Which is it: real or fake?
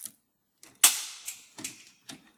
real